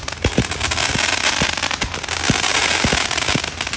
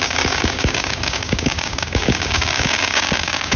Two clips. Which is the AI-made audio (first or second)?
second